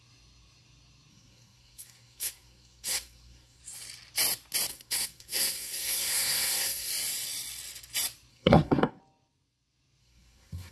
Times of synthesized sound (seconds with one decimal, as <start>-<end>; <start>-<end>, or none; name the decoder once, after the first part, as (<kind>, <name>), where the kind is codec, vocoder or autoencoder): 1.1-3.6 (codec, SNAC); 4.7-6.9; 8.3-9.0; 10.0-10.7